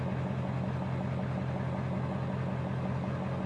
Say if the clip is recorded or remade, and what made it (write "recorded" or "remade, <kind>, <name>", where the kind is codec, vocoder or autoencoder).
recorded